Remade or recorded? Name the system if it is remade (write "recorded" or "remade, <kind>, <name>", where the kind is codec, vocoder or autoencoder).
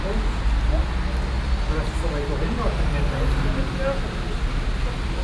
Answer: recorded